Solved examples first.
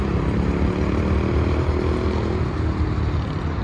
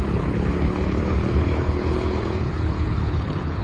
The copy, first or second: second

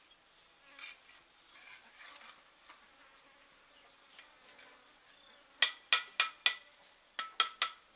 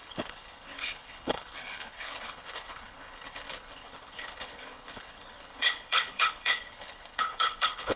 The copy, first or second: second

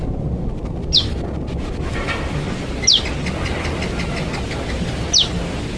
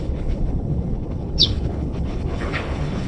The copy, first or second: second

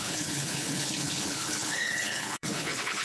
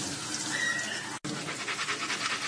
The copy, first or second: first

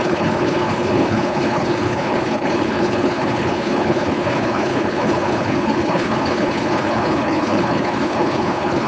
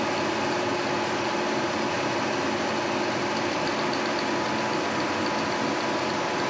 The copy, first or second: first